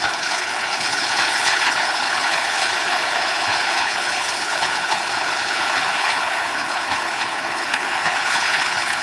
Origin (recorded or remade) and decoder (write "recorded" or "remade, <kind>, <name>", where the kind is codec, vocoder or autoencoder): remade, codec, HILCodec